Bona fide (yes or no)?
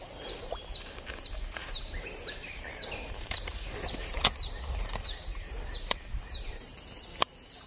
no